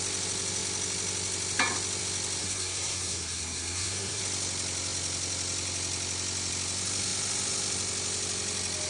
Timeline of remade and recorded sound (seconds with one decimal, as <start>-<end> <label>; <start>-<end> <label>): 0.0-2.4 recorded; 2.4-4.2 remade; 4.2-8.9 recorded